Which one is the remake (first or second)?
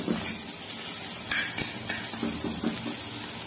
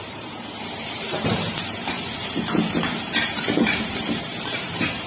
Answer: second